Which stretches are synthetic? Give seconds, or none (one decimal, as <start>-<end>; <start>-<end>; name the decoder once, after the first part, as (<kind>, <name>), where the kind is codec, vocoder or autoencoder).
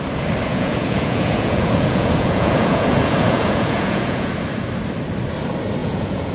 0.5-4.3 (vocoder, Vocos); 5.8-6.3